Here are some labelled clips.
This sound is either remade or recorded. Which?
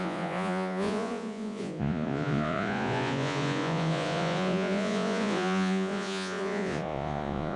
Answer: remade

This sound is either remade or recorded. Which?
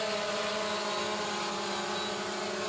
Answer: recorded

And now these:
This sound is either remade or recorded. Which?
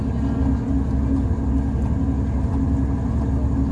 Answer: recorded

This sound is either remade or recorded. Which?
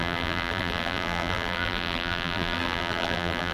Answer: remade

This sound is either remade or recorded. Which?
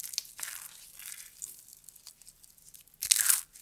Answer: recorded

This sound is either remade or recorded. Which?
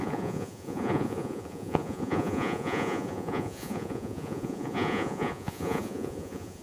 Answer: remade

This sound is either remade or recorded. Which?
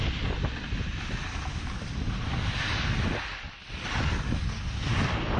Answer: recorded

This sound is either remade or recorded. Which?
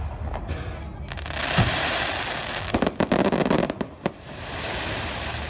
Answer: recorded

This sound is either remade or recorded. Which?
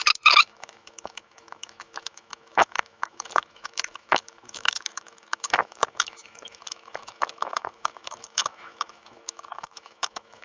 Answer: remade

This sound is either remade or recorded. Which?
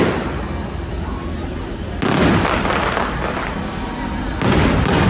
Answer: recorded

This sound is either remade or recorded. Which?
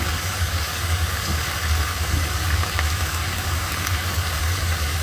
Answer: remade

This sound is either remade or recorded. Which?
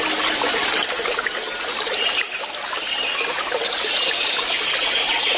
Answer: recorded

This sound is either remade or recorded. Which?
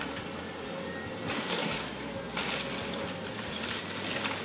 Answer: recorded